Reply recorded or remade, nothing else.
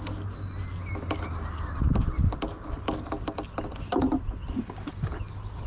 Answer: recorded